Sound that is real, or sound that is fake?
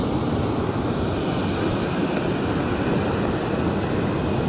real